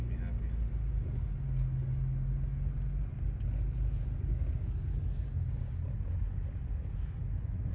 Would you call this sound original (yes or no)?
yes